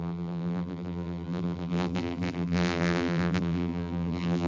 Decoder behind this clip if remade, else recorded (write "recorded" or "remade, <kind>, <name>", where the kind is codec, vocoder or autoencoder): remade, vocoder, BigVGAN v2